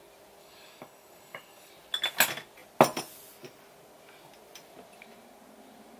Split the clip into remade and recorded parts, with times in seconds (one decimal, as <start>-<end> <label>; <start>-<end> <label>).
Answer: 0.0-0.4 recorded; 0.4-1.7 remade; 1.7-6.0 recorded